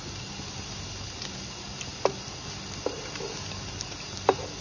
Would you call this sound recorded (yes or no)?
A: yes